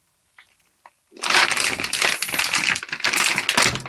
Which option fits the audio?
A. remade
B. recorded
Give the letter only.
B